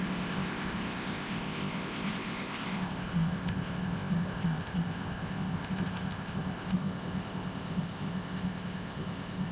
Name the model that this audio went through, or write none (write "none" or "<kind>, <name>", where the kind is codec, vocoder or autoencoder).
codec, ZipCodec